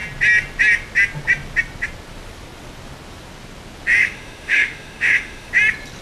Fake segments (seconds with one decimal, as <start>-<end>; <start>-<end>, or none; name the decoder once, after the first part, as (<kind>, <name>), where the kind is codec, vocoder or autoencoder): 4.0-5.5 (autoencoder, DAC-VAE)